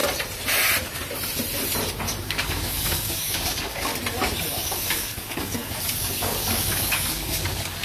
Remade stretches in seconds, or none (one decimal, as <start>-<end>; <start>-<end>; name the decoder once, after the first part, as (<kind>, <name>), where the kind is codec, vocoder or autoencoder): 2.2-3.9 (codec, DAC); 4.5-7.8